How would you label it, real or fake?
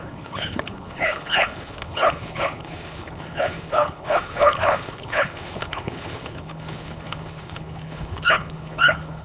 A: fake